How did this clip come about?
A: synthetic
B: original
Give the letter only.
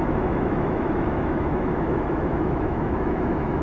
A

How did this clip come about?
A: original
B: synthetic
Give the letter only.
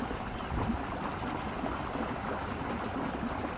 A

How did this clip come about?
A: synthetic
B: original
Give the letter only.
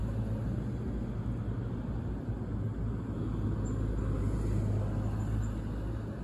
B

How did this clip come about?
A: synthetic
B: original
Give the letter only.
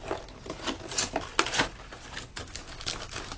B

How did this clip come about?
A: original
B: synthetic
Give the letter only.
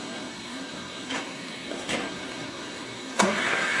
B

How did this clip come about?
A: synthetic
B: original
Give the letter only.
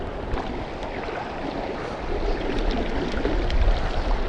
B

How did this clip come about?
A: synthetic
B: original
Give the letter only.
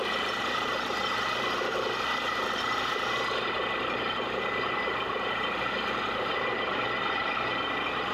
B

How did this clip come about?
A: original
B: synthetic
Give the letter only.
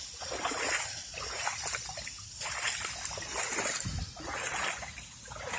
A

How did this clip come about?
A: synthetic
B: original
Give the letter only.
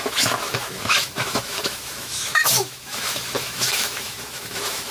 A